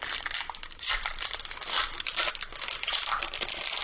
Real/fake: real